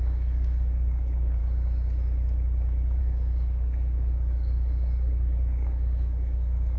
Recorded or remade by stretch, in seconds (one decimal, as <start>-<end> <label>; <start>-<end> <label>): 0.0-1.4 remade; 1.4-3.0 recorded; 3.0-6.8 remade